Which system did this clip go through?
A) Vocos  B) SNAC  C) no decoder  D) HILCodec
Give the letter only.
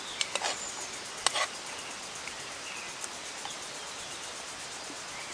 C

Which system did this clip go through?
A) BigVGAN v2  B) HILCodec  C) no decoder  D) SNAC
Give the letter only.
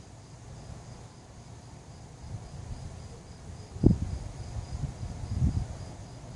C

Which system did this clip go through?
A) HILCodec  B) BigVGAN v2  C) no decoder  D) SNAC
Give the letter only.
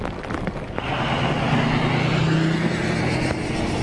C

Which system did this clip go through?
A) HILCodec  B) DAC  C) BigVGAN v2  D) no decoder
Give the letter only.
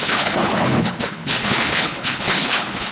A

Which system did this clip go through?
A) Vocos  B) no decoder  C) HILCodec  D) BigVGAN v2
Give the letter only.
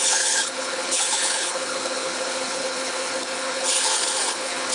C